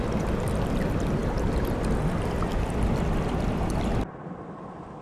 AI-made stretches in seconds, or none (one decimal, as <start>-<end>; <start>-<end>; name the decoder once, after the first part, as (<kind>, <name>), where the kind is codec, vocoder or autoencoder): none